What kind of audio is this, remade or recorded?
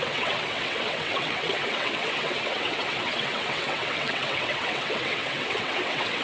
remade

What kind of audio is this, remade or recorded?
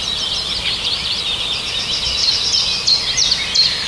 remade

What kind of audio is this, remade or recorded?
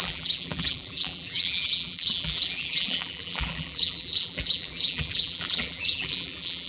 remade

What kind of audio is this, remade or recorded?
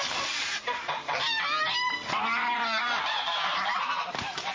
remade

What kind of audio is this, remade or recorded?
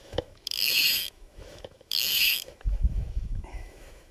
remade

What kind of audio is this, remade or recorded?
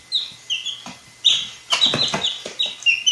recorded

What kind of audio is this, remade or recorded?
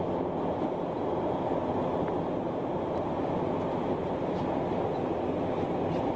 recorded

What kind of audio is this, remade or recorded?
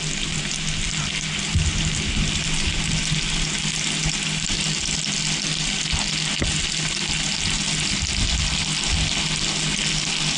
recorded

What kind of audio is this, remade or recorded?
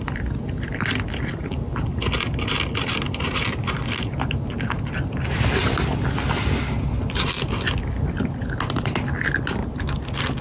recorded